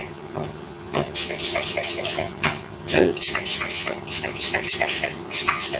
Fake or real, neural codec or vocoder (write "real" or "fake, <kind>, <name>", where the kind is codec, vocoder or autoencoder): fake, vocoder, HiFi-GAN